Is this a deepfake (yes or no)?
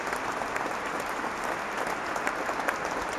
no